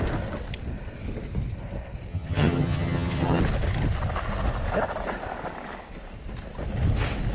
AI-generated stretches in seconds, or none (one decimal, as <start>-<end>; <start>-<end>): 2.1-3.4